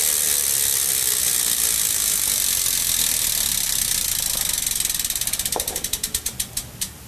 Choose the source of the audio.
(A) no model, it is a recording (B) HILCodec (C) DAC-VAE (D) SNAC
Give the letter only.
A